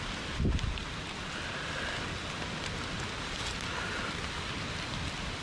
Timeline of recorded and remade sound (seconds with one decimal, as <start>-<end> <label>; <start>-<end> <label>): 0.0-5.4 recorded